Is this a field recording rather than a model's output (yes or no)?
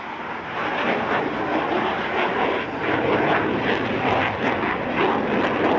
yes